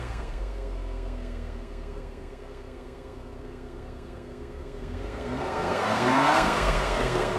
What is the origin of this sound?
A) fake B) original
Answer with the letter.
A